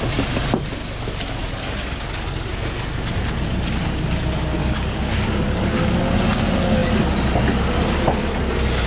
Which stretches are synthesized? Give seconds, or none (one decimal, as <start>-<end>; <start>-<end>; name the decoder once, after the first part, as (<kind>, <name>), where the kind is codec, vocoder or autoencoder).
1.4-2.5 (codec, DAC); 4.6-6.0